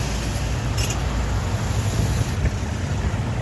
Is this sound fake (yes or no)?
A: no